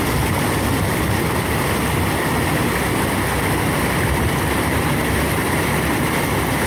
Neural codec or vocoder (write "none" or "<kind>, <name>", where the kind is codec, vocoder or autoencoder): none